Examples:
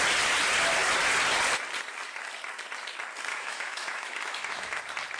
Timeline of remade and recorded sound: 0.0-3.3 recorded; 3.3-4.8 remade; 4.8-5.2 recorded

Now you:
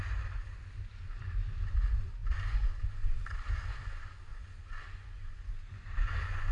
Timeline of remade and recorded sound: 0.0-4.3 recorded; 4.3-6.5 remade

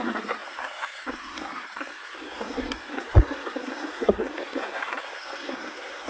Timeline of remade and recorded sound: 0.0-6.1 remade

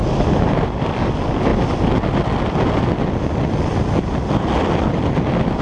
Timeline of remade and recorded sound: 0.0-5.6 recorded

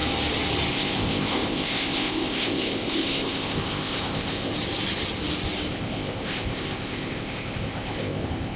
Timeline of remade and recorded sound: 0.0-0.7 recorded; 0.7-4.5 remade; 4.5-5.7 recorded; 5.7-8.6 remade

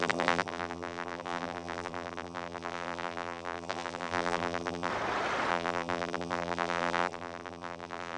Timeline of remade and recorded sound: 0.0-4.9 remade; 4.9-5.5 recorded; 5.5-8.2 remade

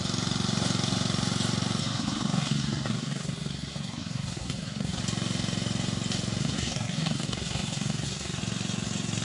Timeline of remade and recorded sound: 0.0-1.8 recorded; 1.8-5.0 remade; 5.0-6.4 recorded; 6.4-8.4 remade; 8.4-9.2 recorded

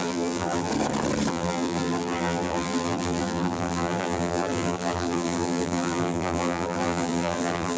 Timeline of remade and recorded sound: 0.0-0.7 remade; 0.7-1.3 recorded; 1.3-7.8 remade